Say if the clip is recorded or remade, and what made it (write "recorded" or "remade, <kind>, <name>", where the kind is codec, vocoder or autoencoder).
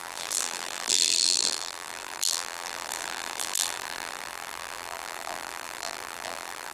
remade, vocoder, BigVGAN v2